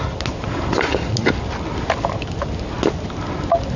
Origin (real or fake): real